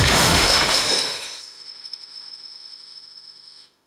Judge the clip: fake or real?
fake